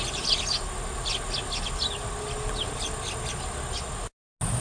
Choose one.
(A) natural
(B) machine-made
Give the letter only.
A